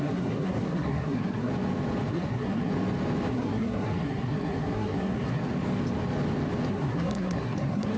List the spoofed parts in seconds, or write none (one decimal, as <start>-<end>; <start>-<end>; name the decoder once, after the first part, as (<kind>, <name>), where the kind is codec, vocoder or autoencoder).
0.0-1.5 (codec, SNAC); 2.1-2.7; 3.3-5.4; 6.7-8.0

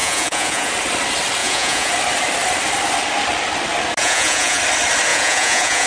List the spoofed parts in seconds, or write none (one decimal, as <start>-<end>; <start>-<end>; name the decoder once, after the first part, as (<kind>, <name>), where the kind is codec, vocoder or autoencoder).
0.0-0.7 (vocoder, Vocos); 1.4-1.9; 4.0-4.6; 5.1-5.9

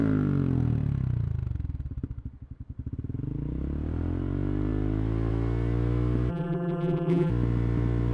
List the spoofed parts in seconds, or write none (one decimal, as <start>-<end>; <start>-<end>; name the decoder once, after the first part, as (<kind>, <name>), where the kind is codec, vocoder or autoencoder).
6.3-7.3 (vocoder, BigVGAN v2)

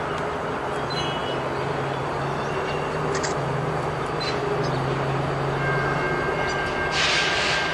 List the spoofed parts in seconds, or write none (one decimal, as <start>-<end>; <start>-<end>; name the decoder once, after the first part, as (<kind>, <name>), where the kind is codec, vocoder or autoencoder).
none

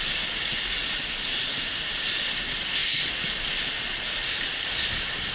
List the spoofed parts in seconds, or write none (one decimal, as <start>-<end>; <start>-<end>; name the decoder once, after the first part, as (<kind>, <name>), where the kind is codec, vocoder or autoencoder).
none

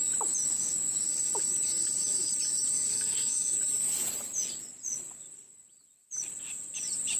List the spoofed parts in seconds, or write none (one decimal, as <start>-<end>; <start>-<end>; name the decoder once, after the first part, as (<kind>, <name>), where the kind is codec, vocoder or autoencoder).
2.9-3.6 (codec, SNAC)

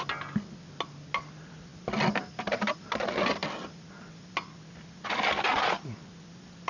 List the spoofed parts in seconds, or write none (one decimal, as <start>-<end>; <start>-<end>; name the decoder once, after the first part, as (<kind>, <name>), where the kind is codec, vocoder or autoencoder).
none